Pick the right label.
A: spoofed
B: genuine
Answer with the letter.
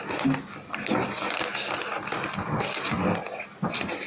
B